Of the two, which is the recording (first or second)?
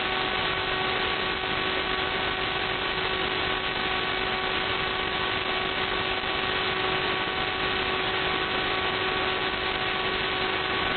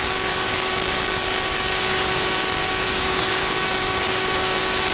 first